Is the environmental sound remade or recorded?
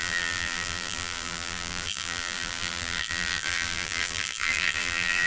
remade